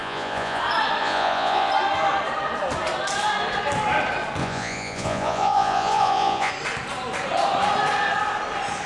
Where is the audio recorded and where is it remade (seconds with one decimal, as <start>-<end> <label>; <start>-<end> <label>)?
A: 0.0-0.6 remade; 0.6-1.0 recorded; 1.0-1.7 remade; 1.7-4.4 recorded; 4.4-6.5 remade; 6.5-8.9 recorded

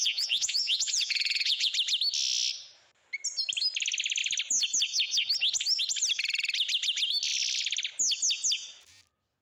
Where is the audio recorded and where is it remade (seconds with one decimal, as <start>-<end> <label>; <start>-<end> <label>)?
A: 0.0-1.7 remade; 1.7-9.4 recorded